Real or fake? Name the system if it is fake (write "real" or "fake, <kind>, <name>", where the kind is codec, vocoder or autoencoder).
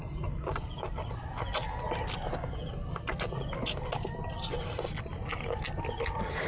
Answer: real